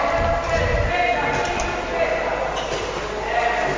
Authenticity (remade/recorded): recorded